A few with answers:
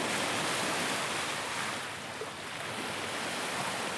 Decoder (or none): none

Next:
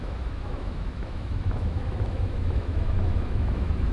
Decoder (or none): autoencoder, DAC-VAE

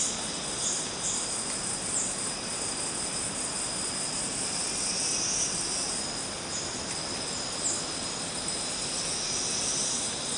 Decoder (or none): none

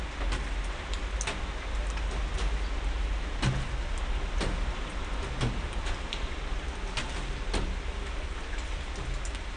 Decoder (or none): none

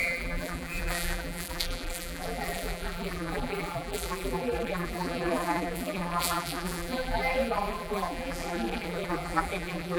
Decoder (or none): vocoder, BigVGAN v2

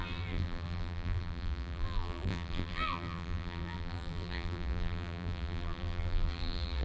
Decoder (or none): vocoder, BigVGAN v2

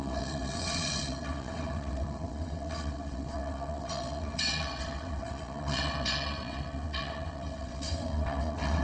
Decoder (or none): vocoder, WaveNeXt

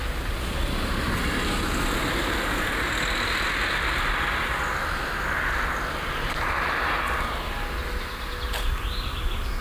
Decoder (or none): none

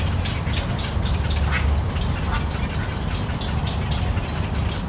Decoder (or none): none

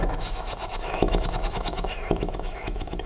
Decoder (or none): autoencoder, DAC-VAE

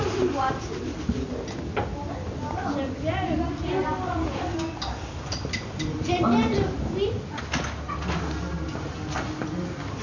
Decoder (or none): none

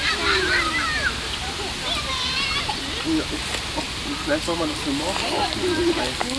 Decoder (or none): none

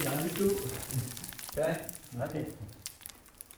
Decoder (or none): vocoder, BigVGAN v2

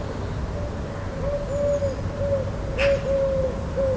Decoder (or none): none